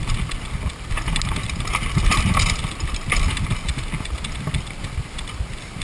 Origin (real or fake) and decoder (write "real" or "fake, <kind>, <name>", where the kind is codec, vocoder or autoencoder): real